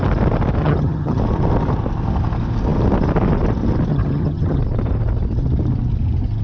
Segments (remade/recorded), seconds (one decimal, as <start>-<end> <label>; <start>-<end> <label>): 0.0-0.6 recorded; 0.6-1.2 remade; 1.2-3.9 recorded; 3.9-4.6 remade; 4.6-6.4 recorded